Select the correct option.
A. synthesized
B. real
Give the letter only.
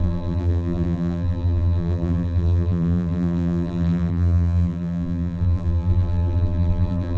A